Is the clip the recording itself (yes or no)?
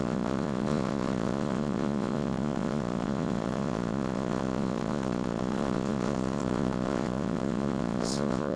no